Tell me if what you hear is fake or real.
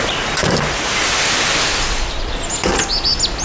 real